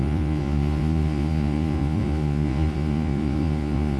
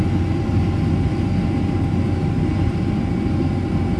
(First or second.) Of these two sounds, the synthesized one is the first